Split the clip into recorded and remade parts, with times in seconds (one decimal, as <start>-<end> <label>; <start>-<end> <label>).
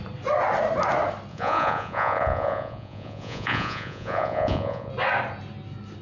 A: 0.0-1.3 recorded; 1.3-4.9 remade; 4.9-6.0 recorded